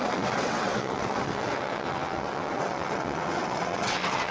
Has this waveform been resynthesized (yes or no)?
yes